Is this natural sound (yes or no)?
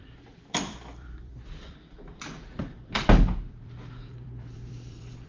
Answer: no